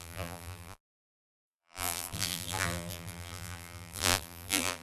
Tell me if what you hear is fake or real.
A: fake